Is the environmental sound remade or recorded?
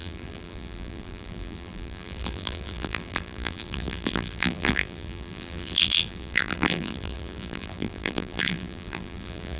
remade